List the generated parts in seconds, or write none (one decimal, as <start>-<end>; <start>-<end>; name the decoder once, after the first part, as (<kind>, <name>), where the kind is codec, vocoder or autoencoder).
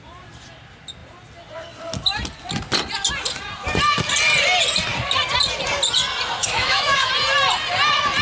6.4-7.1 (autoencoder, DAC-VAE)